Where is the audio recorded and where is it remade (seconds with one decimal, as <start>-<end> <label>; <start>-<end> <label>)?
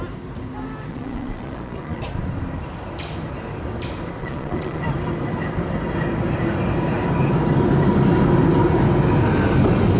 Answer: 0.0-0.9 recorded; 0.9-2.0 remade; 2.0-4.2 recorded; 4.2-4.8 remade; 4.8-10.0 recorded